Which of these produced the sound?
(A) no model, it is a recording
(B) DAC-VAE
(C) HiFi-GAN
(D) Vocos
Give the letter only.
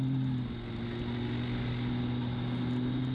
A